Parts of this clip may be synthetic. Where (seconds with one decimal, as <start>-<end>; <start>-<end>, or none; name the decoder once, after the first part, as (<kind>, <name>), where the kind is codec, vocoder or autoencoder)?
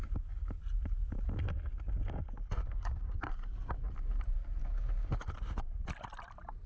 2.6-3.3 (codec, DAC); 4.6-5.1